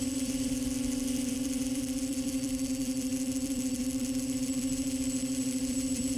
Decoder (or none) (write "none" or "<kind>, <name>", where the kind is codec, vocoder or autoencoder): vocoder, BigVGAN v2